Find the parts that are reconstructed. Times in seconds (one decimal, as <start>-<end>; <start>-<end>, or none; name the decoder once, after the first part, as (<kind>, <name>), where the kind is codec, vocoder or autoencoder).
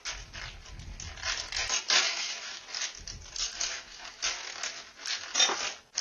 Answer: 2.0-2.6 (autoencoder, DAC-VAE); 3.5-4.2